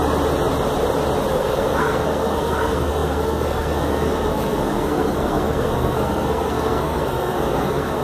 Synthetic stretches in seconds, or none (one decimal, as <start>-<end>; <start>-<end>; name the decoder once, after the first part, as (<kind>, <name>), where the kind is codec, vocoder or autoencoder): 1.3-8.0 (codec, SNAC)

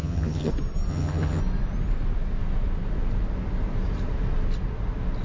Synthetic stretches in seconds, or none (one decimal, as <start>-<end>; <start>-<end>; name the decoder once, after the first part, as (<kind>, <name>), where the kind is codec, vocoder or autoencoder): 0.0-0.5 (vocoder, HiFi-GAN); 0.9-1.4